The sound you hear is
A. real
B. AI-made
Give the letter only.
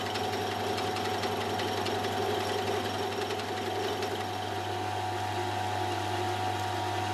A